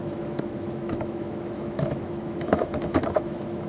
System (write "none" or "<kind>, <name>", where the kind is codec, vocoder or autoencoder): autoencoder, DAC-VAE